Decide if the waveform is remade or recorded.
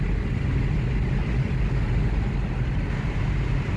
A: recorded